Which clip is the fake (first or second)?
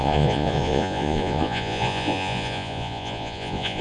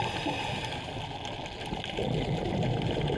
first